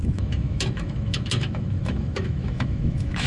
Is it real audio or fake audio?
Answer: fake